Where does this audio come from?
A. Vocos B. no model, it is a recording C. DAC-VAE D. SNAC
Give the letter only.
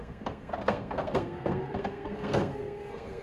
D